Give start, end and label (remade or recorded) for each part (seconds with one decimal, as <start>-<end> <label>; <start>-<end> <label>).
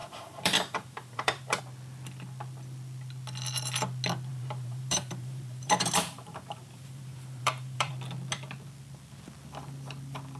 0.0-1.6 remade; 1.6-4.3 recorded; 4.3-7.9 remade; 7.9-10.4 recorded